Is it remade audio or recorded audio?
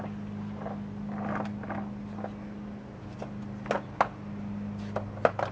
recorded